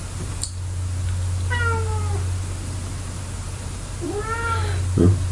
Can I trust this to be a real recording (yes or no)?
yes